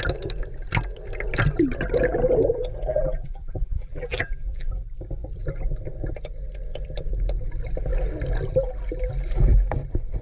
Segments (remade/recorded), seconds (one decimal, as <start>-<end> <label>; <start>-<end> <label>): 0.0-2.9 recorded; 2.9-4.7 remade; 4.7-10.2 recorded